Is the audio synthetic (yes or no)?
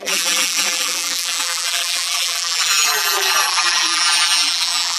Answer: yes